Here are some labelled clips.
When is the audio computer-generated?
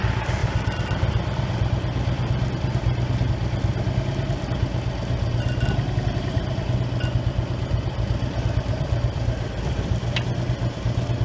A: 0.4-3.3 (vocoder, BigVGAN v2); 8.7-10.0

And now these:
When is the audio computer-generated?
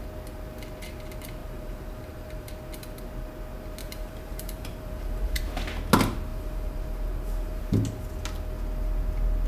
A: 1.4-2.5 (vocoder, BigVGAN v2); 3.8-5.4; 6.3-7.6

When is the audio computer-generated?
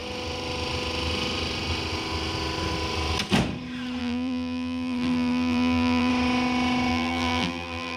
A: 4.0-6.1 (vocoder, BigVGAN v2); 6.9-8.0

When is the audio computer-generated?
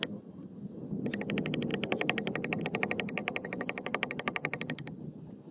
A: 1.7-2.6 (vocoder, BigVGAN v2); 3.2-5.5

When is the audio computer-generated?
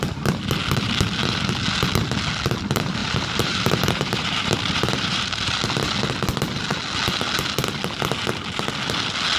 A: 3.0-5.6 (vocoder, BigVGAN v2)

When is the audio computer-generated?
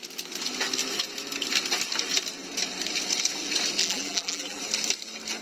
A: 3.8-4.6 (vocoder, BigVGAN v2)